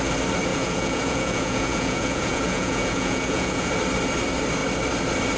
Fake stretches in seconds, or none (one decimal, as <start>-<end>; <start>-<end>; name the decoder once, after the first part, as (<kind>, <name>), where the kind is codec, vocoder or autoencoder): 0.5-3.7 (vocoder, Vocos)